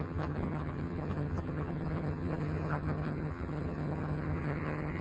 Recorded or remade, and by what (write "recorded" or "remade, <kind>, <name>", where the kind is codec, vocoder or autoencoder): remade, vocoder, HiFi-GAN